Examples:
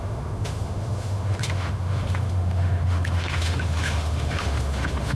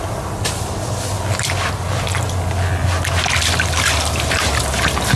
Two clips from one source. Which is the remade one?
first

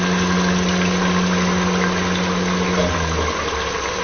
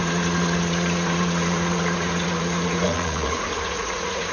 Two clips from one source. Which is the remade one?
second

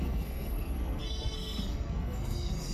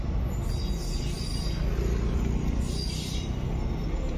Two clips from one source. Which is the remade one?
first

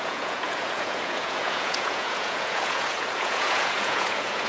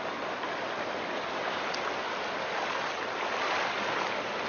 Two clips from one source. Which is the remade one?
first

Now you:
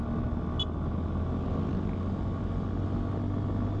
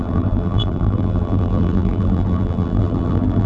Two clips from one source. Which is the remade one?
second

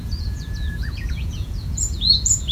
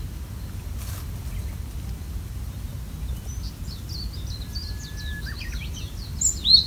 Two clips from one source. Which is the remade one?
first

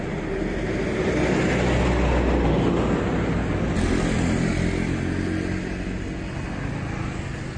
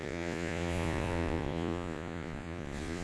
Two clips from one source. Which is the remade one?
second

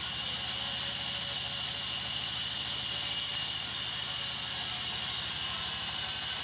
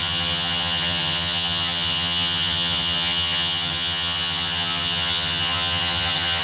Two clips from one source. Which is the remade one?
second